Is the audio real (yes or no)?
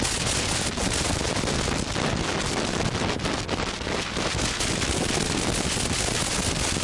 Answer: yes